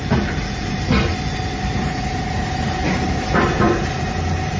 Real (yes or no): yes